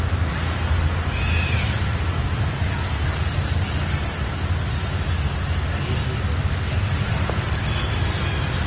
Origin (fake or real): real